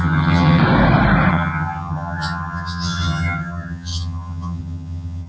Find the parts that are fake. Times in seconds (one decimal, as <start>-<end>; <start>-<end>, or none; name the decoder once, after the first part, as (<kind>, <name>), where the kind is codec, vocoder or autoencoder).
0.0-0.6 (vocoder, HiFi-GAN); 1.3-5.3